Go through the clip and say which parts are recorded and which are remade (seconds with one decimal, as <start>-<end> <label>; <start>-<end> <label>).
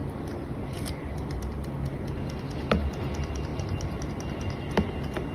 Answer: 0.0-5.3 recorded